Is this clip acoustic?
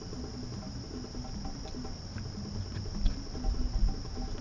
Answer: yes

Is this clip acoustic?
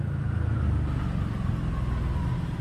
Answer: yes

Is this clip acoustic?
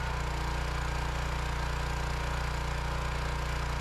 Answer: yes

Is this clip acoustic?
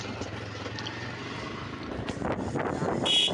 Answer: yes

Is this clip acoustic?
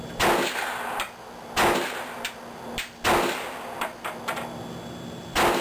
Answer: yes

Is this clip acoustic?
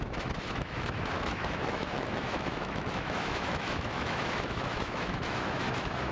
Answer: no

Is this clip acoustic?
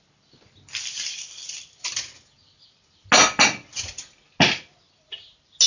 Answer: yes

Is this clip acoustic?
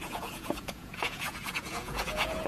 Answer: no